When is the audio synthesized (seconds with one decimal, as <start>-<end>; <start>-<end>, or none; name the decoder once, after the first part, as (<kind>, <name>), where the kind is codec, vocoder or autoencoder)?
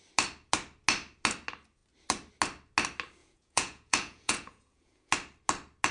3.2-5.1 (vocoder, Vocos)